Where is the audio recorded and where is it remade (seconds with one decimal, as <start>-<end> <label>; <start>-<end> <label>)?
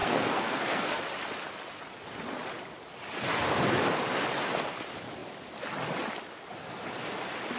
0.0-1.0 remade; 1.0-7.6 recorded